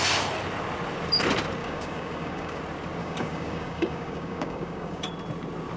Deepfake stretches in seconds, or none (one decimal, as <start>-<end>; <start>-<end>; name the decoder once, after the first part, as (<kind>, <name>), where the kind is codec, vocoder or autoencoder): 1.6-2.6 (codec, DAC); 3.0-5.1